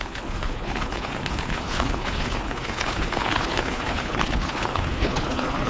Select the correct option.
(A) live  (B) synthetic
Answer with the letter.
B